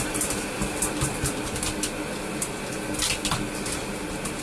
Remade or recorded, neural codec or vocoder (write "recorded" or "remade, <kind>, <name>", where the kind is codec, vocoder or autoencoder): recorded